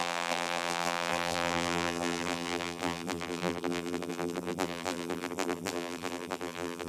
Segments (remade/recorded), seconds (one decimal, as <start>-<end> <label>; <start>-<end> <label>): 0.0-6.9 remade